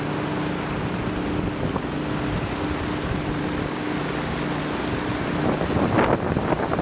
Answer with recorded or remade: recorded